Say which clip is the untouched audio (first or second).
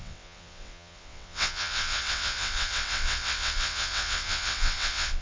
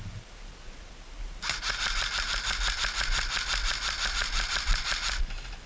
second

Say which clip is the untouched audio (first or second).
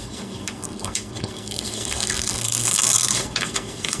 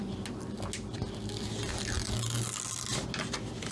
second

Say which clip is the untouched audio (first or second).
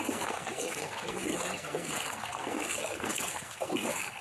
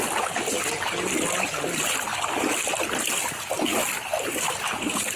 second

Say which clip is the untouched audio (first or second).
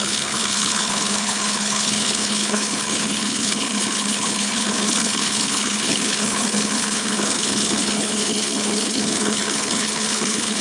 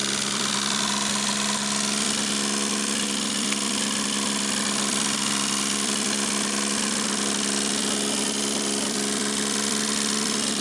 second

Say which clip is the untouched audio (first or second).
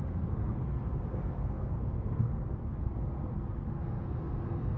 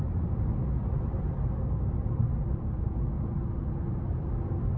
second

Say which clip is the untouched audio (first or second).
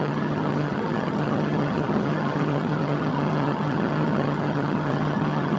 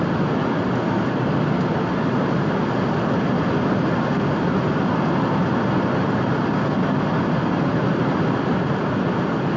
second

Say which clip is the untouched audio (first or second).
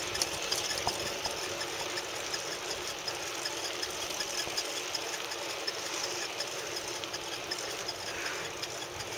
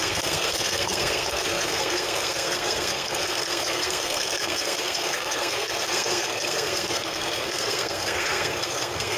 first